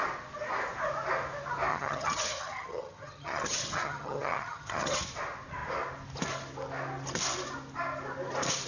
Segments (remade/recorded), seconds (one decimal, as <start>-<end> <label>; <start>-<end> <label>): 0.0-1.7 recorded; 1.7-5.0 remade; 5.0-8.7 recorded